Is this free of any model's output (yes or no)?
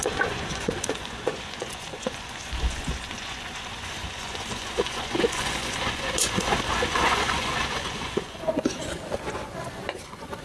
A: no